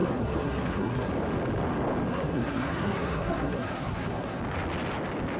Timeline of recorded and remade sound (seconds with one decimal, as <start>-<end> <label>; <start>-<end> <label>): 0.0-1.1 remade; 1.1-2.1 recorded; 2.1-4.4 remade; 4.4-5.4 recorded